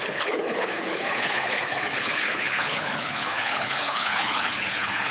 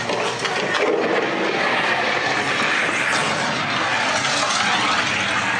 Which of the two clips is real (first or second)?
second